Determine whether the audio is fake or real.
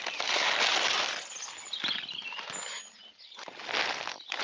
real